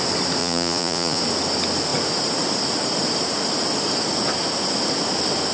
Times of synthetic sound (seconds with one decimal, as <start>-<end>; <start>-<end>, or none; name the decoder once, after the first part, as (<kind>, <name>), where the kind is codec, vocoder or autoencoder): 0.4-1.2 (vocoder, Vocos)

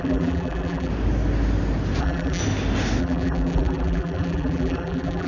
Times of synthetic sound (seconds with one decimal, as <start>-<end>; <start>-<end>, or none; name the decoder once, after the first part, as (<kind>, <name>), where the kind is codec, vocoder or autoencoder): 0.0-0.9 (vocoder, BigVGAN v2); 2.0-2.4; 3.0-5.3